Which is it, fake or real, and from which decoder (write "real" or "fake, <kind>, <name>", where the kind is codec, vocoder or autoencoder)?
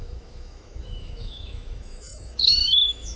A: fake, autoencoder, DAC-VAE